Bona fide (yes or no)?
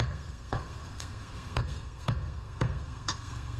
no